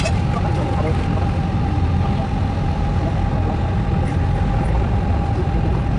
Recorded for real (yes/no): yes